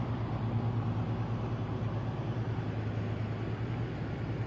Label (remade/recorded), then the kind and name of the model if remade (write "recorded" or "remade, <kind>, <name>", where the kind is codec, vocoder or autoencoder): recorded